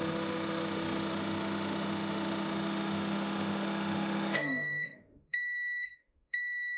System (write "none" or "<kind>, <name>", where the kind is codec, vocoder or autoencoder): autoencoder, DAC-VAE